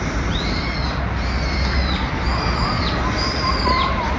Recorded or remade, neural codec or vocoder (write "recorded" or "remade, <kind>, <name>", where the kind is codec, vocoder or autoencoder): recorded